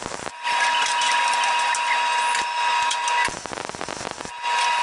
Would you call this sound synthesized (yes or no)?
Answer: no